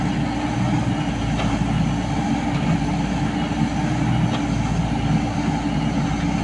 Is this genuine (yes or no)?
yes